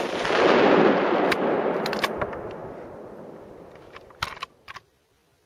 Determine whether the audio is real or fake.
real